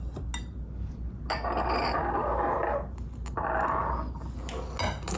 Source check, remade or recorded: recorded